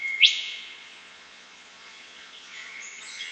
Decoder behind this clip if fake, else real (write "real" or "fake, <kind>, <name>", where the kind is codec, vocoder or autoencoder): fake, vocoder, Vocos